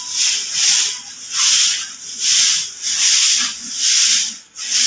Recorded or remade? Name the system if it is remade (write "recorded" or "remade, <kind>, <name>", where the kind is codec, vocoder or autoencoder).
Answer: recorded